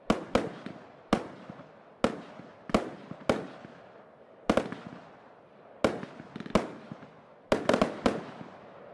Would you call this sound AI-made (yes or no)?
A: no